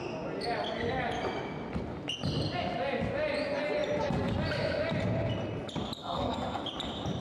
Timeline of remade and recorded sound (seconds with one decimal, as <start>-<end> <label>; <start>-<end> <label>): 0.0-6.0 recorded; 6.0-6.6 remade; 6.6-7.2 recorded

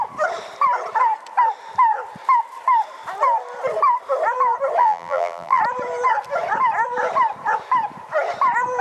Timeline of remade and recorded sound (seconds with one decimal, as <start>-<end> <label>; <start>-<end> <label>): 0.0-4.8 recorded; 4.8-5.6 remade; 5.6-8.8 recorded

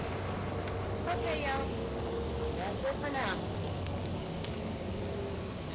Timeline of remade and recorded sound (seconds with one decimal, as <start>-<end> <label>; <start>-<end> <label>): 0.0-1.6 recorded; 1.6-5.0 remade; 5.0-5.7 recorded

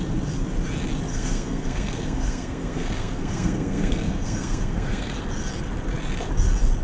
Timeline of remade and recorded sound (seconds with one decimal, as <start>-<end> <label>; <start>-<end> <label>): 0.0-1.1 recorded; 1.1-5.2 remade; 5.2-6.8 recorded

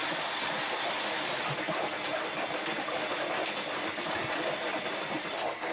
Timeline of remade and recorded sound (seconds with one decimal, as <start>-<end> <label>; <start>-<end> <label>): 0.0-5.7 recorded